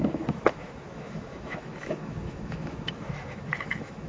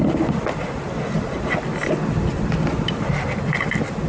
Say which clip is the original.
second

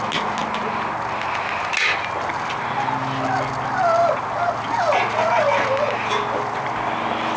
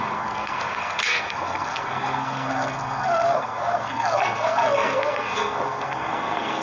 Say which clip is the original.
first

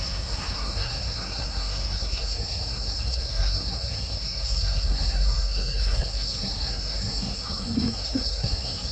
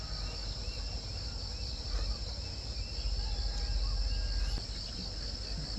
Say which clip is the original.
second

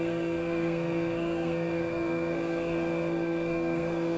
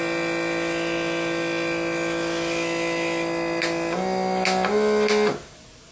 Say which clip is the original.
second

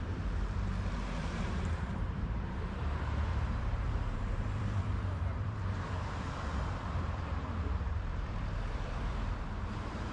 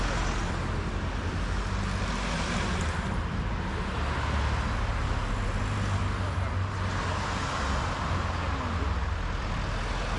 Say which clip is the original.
second